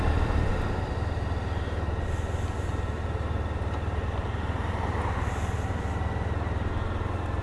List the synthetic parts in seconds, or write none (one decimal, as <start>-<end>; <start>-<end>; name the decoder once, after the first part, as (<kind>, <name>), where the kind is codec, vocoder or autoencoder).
none

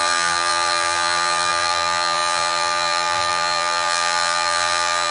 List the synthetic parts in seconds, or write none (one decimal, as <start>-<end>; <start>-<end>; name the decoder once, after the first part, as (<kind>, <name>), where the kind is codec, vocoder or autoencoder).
0.0-5.1 (vocoder, BigVGAN v2)

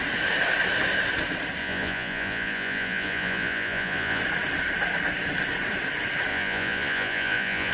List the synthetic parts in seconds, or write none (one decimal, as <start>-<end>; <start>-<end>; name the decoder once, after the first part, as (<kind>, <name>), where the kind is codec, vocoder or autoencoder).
1.6-4.2 (vocoder, Vocos); 6.3-7.7

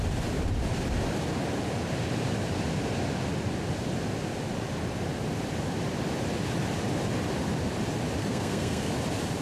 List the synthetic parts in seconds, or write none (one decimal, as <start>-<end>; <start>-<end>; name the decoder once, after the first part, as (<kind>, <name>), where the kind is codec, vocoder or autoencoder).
8.2-8.9 (codec, SNAC)

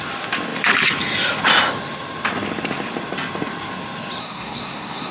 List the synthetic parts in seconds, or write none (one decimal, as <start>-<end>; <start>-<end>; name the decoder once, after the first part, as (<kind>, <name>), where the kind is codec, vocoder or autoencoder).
4.2-5.1 (codec, SNAC)

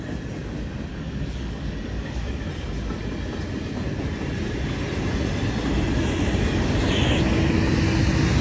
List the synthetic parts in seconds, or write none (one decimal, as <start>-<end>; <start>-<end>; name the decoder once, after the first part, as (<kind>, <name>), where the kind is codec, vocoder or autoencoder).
0.9-2.4 (codec, DAC)